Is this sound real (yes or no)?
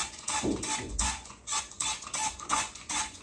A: no